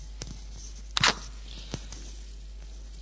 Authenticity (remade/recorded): recorded